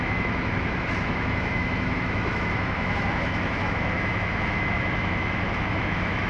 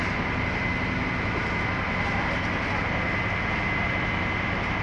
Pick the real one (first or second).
second